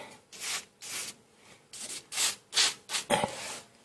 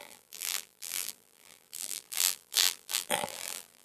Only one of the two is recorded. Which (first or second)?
first